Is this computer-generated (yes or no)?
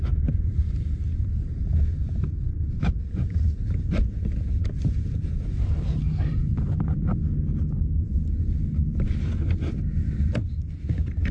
yes